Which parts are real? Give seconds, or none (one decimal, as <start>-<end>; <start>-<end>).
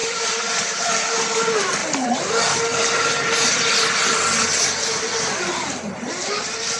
1.1-1.8; 2.3-6.8